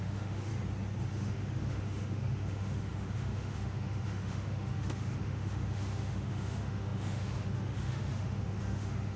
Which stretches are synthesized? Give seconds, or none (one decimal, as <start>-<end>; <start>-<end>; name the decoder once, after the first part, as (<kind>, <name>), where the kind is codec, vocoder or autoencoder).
0.0-0.5 (autoencoder, DAC-VAE); 1.1-9.2